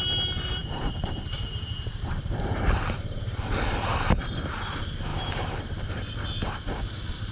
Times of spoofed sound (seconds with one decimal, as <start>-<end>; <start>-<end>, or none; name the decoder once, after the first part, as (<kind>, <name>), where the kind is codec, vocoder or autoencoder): 0.6-4.2 (vocoder, BigVGAN v2); 5.1-6.1